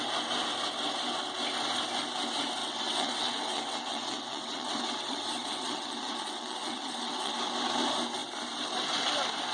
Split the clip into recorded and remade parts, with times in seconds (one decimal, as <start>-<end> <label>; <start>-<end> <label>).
0.0-2.6 recorded; 2.6-7.3 remade; 7.3-9.5 recorded